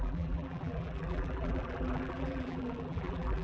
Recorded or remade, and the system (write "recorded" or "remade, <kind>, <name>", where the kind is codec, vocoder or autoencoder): remade, vocoder, BigVGAN v2